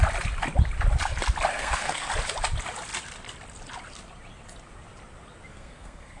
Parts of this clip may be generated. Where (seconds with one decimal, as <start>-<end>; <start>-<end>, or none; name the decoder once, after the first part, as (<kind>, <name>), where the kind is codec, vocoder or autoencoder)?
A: 1.5-2.1 (codec, SNAC); 5.5-6.2